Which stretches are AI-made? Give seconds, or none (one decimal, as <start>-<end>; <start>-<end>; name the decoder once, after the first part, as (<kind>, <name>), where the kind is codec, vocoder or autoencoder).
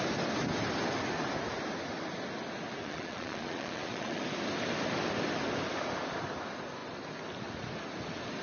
2.8-4.2 (vocoder, Vocos)